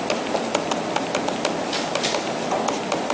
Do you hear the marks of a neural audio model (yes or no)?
no